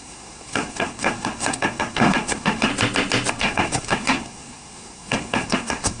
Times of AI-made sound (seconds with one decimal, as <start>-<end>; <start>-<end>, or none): 0.0-2.7; 3.3-6.0